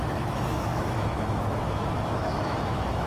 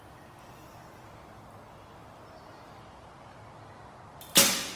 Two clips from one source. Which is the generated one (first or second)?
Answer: first